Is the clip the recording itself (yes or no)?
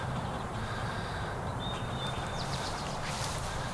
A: no